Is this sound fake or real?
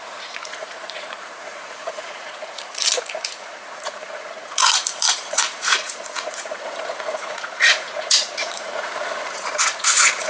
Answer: fake